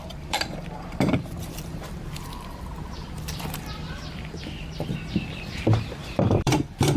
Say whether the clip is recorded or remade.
remade